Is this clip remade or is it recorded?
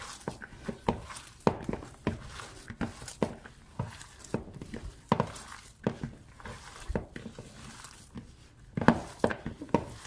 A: recorded